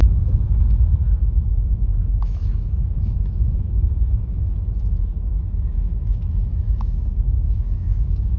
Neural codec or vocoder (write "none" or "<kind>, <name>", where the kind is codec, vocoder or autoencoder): autoencoder, DAC-VAE